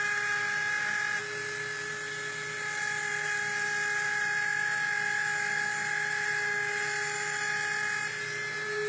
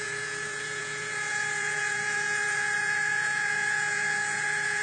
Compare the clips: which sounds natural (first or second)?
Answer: first